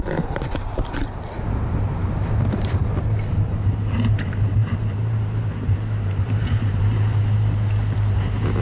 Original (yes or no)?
no